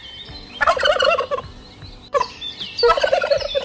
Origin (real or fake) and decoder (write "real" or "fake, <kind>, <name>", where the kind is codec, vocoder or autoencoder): real